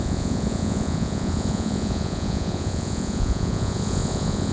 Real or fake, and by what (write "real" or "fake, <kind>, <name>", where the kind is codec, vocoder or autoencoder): fake, vocoder, Vocos